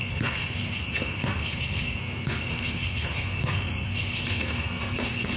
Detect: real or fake fake